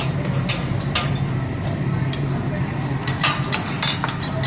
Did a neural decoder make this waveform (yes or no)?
no